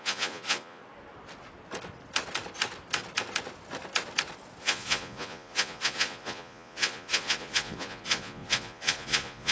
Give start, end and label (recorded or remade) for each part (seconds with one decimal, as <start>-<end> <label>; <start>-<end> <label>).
0.0-0.8 remade; 0.8-4.6 recorded; 4.6-9.5 remade

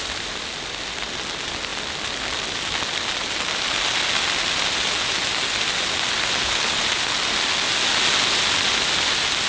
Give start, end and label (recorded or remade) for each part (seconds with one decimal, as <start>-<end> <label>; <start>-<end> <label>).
0.0-9.5 recorded

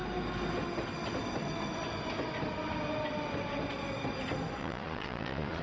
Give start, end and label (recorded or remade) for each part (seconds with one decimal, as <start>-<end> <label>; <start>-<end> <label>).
0.0-4.6 recorded; 4.6-5.6 remade

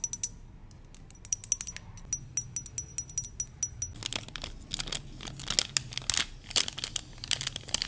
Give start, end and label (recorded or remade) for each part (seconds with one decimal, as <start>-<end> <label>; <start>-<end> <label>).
0.0-7.9 recorded